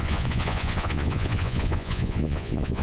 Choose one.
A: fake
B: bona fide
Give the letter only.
A